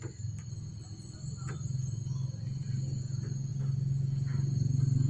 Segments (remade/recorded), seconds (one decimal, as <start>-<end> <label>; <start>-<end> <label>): 0.0-5.1 recorded